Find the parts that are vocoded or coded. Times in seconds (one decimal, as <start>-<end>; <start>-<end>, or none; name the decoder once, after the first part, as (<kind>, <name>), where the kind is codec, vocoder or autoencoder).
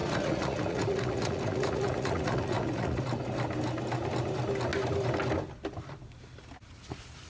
0.0-3.0 (vocoder, Vocos)